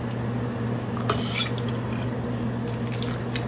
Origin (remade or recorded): recorded